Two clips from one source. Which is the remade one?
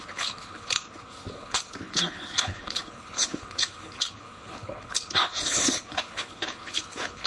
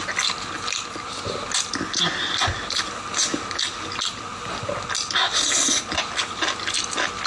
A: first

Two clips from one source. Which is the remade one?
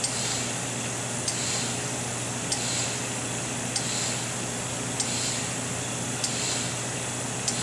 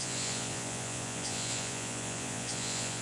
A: second